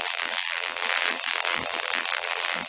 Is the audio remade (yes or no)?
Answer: yes